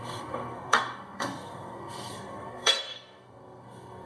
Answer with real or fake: fake